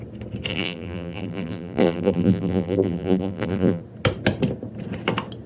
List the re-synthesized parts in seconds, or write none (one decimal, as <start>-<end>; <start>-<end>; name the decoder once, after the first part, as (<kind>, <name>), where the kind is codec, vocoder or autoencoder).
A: 0.5-3.8 (vocoder, BigVGAN v2)